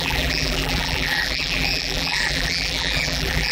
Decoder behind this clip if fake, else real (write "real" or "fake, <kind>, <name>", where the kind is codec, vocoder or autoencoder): fake, vocoder, BigVGAN v2